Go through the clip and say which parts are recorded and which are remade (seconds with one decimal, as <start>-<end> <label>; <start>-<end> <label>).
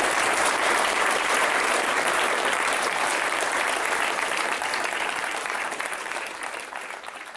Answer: 0.0-7.4 remade